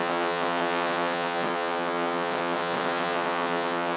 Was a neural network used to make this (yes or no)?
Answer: yes